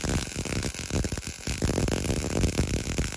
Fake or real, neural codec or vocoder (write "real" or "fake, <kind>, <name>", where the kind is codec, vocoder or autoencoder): real